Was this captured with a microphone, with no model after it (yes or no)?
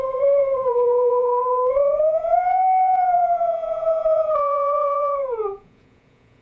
no